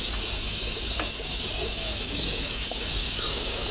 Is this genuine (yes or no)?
no